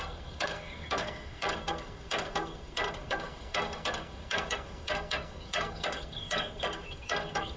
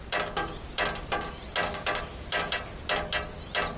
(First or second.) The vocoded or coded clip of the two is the first